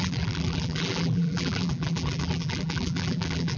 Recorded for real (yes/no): no